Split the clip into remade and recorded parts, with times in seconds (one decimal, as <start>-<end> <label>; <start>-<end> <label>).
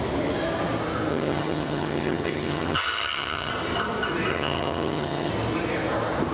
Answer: 0.0-1.1 recorded; 1.1-3.5 remade; 3.5-4.3 recorded; 4.3-5.3 remade; 5.3-6.3 recorded